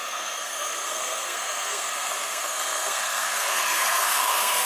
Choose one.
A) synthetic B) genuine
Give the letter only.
A